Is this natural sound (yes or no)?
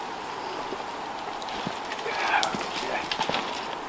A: yes